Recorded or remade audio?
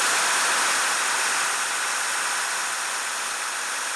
recorded